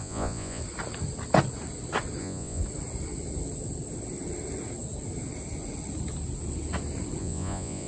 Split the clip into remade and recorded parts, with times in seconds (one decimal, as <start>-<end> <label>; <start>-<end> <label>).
0.0-0.6 remade; 0.6-2.2 recorded; 2.2-2.6 remade; 2.6-7.2 recorded; 7.2-7.9 remade